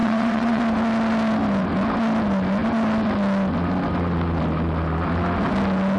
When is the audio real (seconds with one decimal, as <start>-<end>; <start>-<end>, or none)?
0.6-6.0

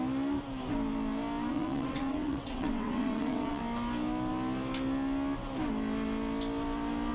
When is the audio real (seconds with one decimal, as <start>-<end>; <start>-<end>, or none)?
0.0-1.5; 3.6-7.1

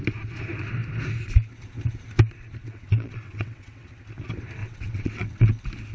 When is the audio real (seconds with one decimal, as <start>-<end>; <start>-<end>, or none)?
0.0-2.6; 3.9-4.6; 5.5-5.9

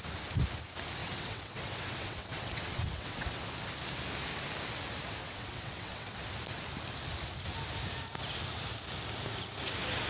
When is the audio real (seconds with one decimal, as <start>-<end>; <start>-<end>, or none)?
0.0-1.0; 3.4-5.2; 6.2-10.1

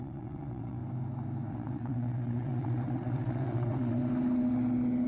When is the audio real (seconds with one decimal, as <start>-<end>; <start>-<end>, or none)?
0.8-1.5; 4.0-5.1

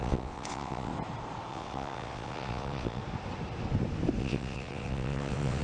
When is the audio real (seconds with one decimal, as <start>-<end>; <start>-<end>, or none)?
0.9-1.5; 3.0-4.2

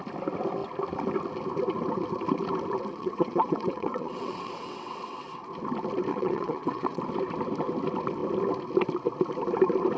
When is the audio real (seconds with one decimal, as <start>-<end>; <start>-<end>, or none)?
0.0-2.9; 5.5-6.1; 7.0-10.0